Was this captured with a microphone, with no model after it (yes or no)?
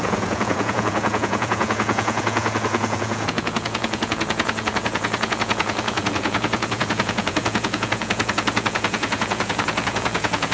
no